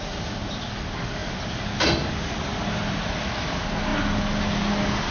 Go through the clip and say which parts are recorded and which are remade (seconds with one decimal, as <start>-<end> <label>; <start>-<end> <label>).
0.0-5.1 recorded